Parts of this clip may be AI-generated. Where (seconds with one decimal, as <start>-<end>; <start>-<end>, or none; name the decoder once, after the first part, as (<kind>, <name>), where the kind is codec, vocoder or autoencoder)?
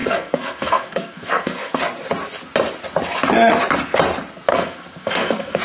0.0-1.8 (codec, SNAC); 4.5-5.6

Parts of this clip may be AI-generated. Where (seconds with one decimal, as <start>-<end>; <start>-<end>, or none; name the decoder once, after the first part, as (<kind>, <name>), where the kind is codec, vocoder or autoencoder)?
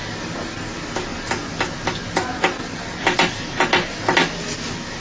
none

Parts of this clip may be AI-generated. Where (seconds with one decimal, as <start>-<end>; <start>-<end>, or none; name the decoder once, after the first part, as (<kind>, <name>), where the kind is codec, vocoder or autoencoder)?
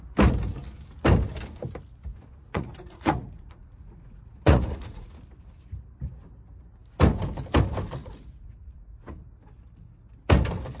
2.1-5.2 (vocoder, Vocos); 8.0-9.2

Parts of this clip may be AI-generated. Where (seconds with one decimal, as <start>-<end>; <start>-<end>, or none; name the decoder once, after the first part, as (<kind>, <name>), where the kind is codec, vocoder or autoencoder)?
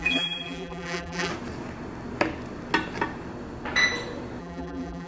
0.0-1.3 (vocoder, BigVGAN v2); 4.4-5.1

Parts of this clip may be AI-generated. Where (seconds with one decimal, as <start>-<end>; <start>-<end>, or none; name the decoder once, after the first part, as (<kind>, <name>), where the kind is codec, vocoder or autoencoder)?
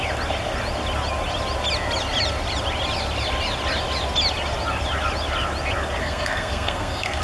6.0-7.2 (codec, SNAC)